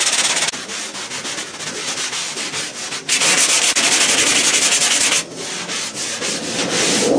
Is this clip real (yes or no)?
yes